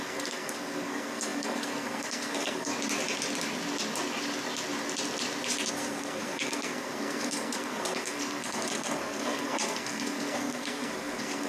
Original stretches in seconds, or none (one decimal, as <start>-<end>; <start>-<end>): 2.7-5.7